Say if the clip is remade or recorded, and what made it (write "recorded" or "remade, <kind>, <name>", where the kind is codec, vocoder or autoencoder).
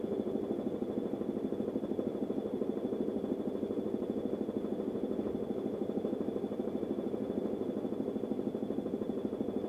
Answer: recorded